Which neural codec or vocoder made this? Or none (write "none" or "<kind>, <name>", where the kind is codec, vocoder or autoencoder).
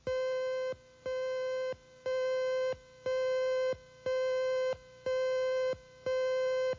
none